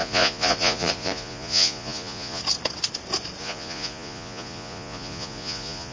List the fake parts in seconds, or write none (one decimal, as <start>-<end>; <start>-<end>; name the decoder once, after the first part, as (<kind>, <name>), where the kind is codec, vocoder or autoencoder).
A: 0.0-2.4 (vocoder, Vocos); 3.4-5.9